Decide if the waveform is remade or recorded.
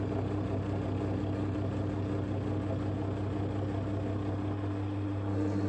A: recorded